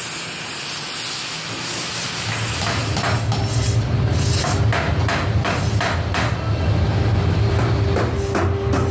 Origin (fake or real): real